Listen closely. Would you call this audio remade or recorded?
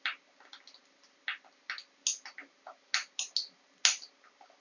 recorded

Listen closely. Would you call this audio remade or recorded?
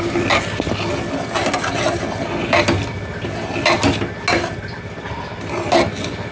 recorded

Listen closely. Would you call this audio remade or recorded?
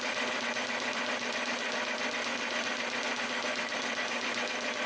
recorded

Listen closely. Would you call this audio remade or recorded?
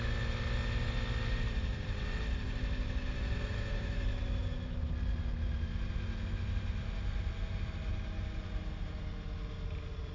recorded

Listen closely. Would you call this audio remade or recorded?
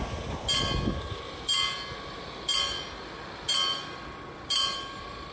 recorded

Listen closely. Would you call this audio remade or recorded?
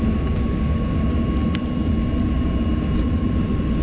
recorded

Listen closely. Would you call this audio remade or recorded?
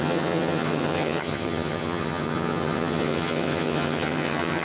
remade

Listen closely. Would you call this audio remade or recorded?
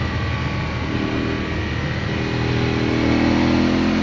recorded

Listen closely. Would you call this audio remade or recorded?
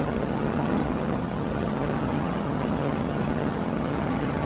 remade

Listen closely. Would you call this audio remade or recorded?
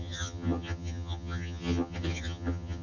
remade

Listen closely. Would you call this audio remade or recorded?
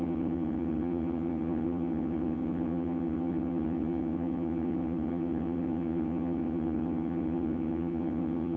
remade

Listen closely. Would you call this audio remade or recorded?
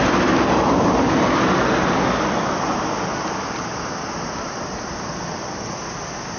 recorded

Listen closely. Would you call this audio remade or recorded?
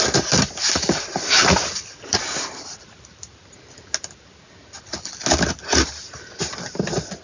recorded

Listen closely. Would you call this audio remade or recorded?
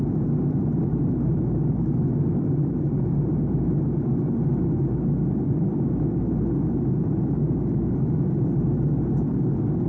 recorded